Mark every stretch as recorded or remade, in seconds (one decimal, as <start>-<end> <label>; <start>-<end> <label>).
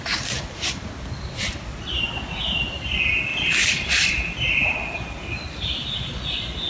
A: 0.0-6.7 recorded